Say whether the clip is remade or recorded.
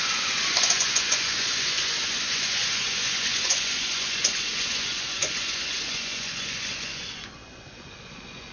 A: remade